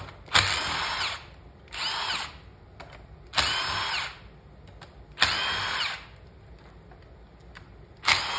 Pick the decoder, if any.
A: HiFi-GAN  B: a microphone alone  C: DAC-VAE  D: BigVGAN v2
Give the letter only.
B